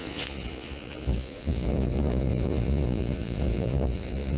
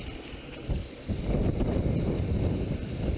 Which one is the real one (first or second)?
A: second